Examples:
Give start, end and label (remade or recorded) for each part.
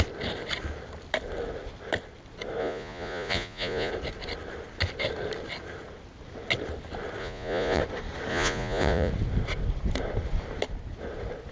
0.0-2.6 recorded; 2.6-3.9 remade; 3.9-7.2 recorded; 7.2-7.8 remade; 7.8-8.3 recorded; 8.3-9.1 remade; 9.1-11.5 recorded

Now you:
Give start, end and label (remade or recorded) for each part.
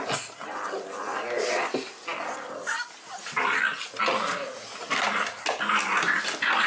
0.0-6.7 recorded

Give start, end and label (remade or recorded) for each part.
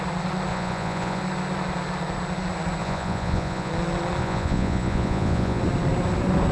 0.0-0.5 recorded; 0.5-1.2 remade; 1.2-2.8 recorded; 2.8-3.7 remade; 3.7-4.2 recorded; 4.2-5.6 remade; 5.6-6.5 recorded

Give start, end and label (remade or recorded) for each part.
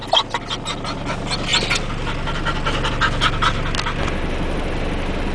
0.0-5.3 recorded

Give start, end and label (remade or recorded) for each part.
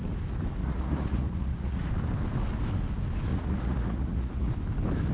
0.0-0.6 recorded; 0.6-1.9 remade; 1.9-3.3 recorded; 3.3-4.5 remade; 4.5-5.1 recorded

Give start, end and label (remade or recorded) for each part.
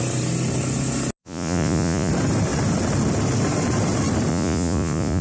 0.0-1.2 recorded; 1.2-2.1 remade; 2.1-4.3 recorded; 4.3-5.2 remade